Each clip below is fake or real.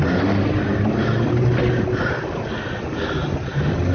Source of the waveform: real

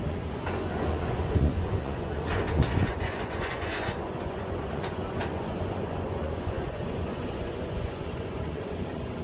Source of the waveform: fake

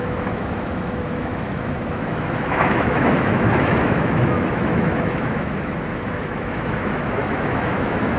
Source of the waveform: fake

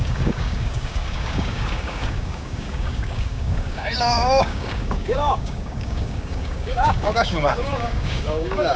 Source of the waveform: fake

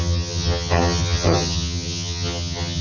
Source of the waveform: fake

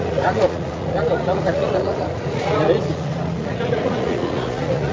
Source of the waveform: fake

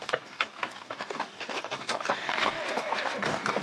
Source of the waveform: fake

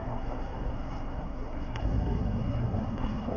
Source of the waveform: fake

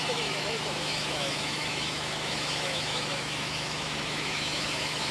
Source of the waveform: fake